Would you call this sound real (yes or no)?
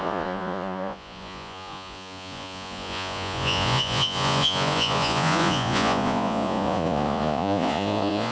no